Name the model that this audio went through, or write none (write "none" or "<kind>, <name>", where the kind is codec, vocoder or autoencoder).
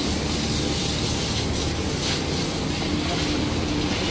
none